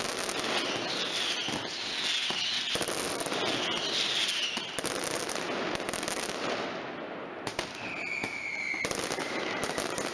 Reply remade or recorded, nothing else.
recorded